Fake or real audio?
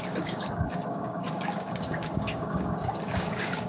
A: fake